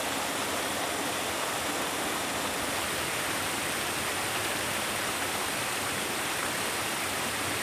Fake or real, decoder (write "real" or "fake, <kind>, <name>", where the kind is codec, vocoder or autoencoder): real